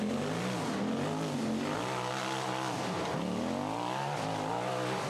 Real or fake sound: real